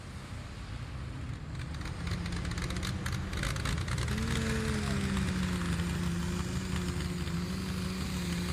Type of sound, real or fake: real